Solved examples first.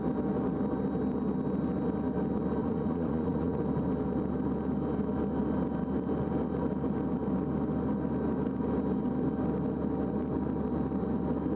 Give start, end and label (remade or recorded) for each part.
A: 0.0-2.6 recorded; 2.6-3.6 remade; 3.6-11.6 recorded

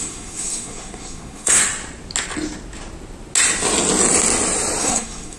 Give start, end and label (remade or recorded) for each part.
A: 0.0-1.6 remade; 1.6-4.8 recorded; 4.8-5.4 remade

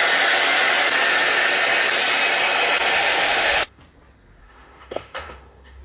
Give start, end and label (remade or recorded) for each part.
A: 0.0-2.9 recorded; 2.9-3.8 remade; 3.8-4.4 recorded; 4.4-5.8 remade

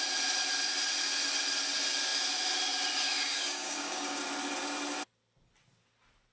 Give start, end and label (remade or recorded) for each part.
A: 0.0-3.3 recorded; 3.3-4.2 remade; 4.2-6.3 recorded

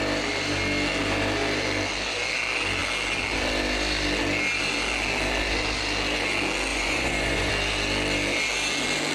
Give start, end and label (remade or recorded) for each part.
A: 0.0-6.7 recorded; 6.7-7.5 remade; 7.5-9.1 recorded

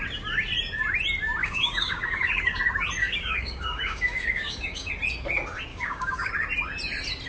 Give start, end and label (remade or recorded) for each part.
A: 0.0-1.4 recorded; 1.4-2.6 remade; 2.6-3.0 recorded; 3.0-4.9 remade; 4.9-5.7 recorded; 5.7-6.3 remade; 6.3-7.3 recorded

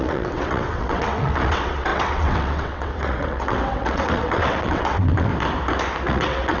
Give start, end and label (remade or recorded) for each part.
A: 0.0-5.3 remade; 5.3-6.0 recorded; 6.0-6.6 remade

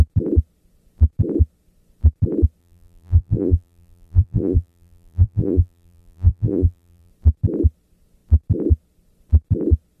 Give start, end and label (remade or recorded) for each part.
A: 0.0-2.6 recorded; 2.6-7.1 remade; 7.1-10.0 recorded